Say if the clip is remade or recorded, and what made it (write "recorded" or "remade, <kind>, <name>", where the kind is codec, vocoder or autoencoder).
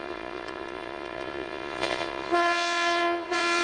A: remade, vocoder, Vocos